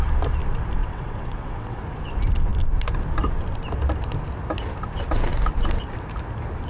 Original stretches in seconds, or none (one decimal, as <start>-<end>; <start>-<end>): 0.0-0.8; 1.8-6.7

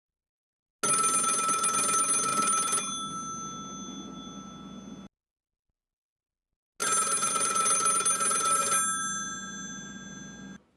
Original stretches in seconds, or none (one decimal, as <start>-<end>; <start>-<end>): 0.0-10.8

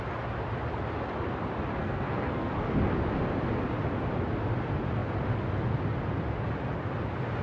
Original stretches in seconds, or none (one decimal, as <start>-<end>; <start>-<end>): 0.0-1.8; 2.5-7.4

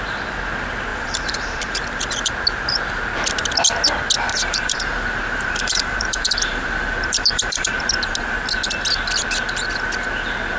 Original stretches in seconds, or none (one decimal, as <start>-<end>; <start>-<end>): 0.0-0.9; 2.3-4.3; 7.9-10.6

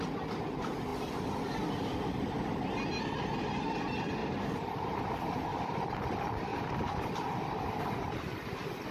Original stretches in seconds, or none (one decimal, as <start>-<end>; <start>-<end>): 0.0-4.2; 5.0-5.5; 6.0-6.5; 7.1-8.9

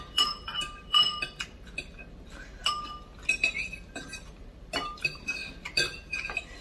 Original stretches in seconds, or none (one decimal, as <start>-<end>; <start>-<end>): 2.6-3.3

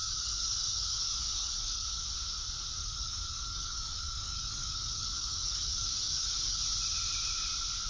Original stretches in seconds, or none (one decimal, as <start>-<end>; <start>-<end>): 2.1-2.8; 6.6-7.9